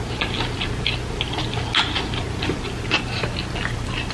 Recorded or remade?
recorded